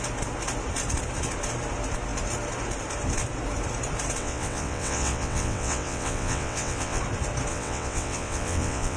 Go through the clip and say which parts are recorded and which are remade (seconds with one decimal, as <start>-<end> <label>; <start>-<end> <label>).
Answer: 0.0-4.2 recorded; 4.2-7.0 remade; 7.0-7.5 recorded; 7.5-9.0 remade